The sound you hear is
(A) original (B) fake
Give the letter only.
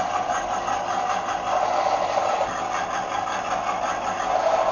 A